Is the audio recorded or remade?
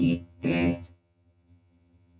remade